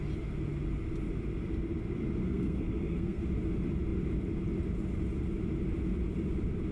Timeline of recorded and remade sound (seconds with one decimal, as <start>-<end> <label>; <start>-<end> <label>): 0.0-2.2 recorded; 2.2-3.2 remade; 3.2-6.7 recorded